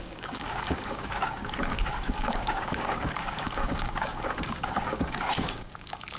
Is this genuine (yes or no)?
no